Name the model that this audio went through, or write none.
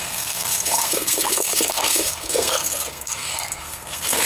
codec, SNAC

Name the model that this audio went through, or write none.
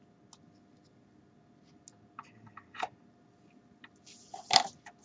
none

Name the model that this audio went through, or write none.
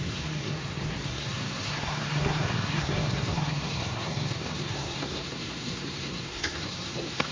codec, SNAC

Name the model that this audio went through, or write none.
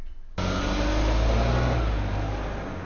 none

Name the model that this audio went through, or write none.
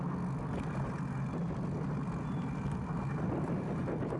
none